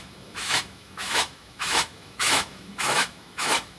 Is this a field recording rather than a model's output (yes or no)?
no